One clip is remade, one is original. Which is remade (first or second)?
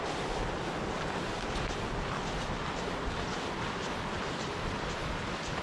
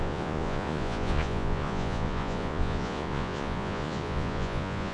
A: second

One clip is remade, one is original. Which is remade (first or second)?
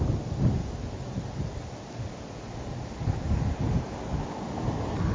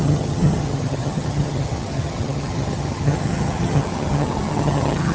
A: second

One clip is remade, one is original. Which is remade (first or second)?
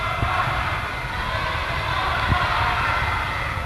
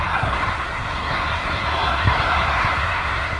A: second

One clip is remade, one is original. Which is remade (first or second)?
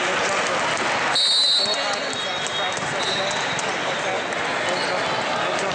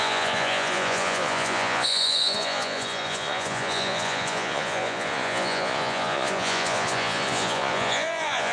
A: second